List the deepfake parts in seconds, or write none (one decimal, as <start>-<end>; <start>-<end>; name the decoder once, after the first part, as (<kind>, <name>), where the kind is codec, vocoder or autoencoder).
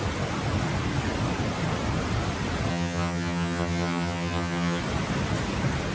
2.7-4.8 (vocoder, HiFi-GAN)